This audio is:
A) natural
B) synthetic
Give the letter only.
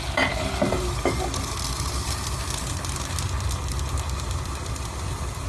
A